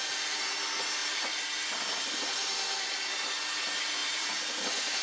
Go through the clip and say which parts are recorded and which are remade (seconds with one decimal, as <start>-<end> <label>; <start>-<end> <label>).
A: 0.0-1.0 recorded; 1.0-3.2 remade; 3.2-4.0 recorded; 4.0-5.0 remade